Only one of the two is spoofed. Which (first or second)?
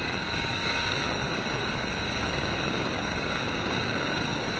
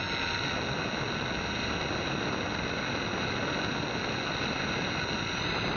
first